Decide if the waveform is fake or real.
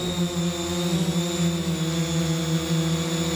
real